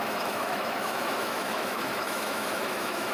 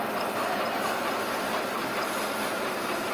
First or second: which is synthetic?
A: first